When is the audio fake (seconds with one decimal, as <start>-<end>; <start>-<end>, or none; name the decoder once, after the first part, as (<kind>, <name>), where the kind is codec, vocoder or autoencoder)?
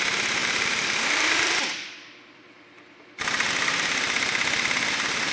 0.4-3.5 (vocoder, BigVGAN v2)